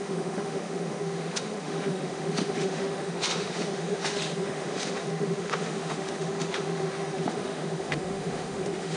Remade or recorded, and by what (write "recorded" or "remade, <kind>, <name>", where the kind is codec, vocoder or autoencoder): remade, autoencoder, DAC-VAE